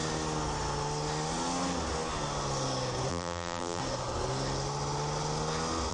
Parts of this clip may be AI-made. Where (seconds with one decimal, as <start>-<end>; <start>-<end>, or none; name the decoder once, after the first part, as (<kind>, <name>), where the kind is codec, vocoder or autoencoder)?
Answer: 3.1-3.8 (vocoder, BigVGAN v2)